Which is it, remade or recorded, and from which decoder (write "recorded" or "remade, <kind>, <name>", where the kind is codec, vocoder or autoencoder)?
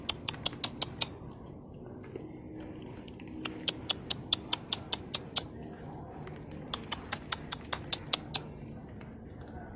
recorded